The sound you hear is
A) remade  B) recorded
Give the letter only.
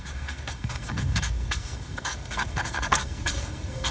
A